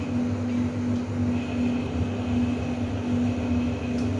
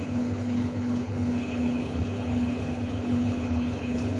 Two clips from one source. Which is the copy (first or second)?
second